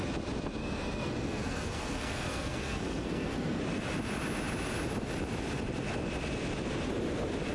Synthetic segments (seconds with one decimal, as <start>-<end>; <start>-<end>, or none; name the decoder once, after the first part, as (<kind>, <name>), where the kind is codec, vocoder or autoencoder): 0.6-3.6 (codec, SNAC)